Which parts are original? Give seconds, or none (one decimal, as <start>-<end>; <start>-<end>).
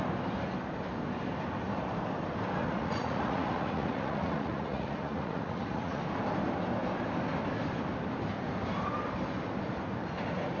0.0-2.6; 6.0-10.6